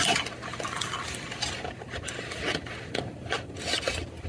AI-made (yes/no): no